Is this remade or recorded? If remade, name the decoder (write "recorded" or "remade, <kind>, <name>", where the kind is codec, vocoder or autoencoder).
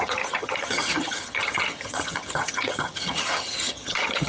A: remade, vocoder, HiFi-GAN